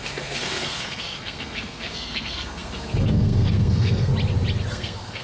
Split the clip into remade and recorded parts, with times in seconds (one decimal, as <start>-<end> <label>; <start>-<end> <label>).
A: 0.0-4.1 remade; 4.1-4.7 recorded; 4.7-5.2 remade